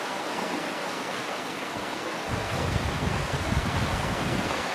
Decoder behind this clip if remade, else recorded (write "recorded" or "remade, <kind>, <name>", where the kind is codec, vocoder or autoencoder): remade, codec, SNAC